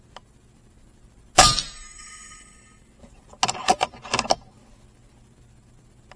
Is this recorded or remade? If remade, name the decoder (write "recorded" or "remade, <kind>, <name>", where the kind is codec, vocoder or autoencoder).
recorded